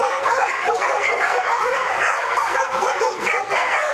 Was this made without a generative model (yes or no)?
no